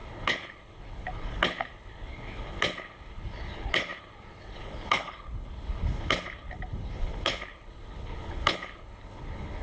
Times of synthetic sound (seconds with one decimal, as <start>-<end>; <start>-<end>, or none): 0.0-9.6